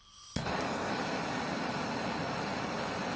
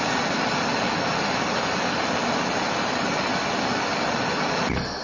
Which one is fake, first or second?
first